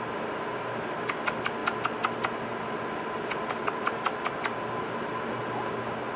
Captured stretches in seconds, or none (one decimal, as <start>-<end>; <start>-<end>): 0.0-6.2